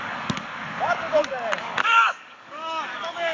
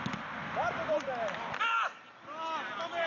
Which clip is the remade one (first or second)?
first